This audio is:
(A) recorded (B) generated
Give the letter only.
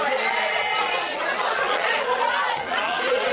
B